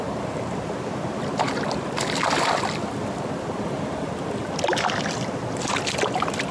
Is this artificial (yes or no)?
no